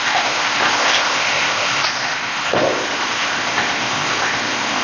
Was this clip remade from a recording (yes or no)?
yes